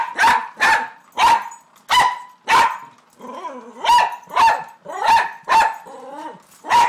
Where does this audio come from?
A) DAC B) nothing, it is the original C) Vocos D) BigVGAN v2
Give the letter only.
B